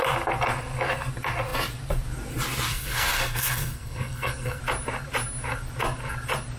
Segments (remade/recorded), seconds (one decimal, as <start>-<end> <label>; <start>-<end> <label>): 0.0-2.7 recorded; 2.7-4.6 remade; 4.6-6.6 recorded